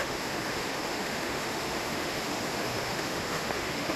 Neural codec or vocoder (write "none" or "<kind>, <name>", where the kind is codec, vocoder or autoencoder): autoencoder, DAC-VAE